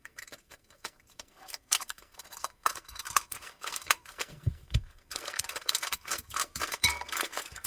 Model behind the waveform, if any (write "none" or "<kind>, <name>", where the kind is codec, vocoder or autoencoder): codec, SNAC